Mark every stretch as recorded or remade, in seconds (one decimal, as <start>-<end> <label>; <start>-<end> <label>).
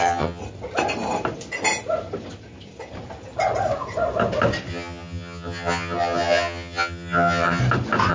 0.0-0.4 remade; 0.4-4.7 recorded; 4.7-7.6 remade; 7.6-8.1 recorded